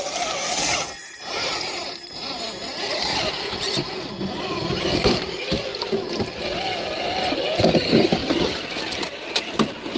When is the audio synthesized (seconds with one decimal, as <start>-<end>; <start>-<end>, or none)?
0.0-5.7; 7.6-8.2; 9.3-10.0